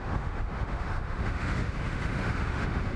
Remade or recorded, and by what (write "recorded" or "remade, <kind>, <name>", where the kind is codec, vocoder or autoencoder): remade, autoencoder, DAC-VAE